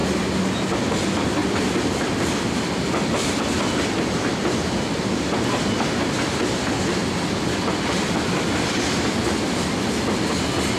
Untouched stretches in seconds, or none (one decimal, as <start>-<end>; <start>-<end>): 0.0-1.4; 2.3-7.0; 8.1-10.8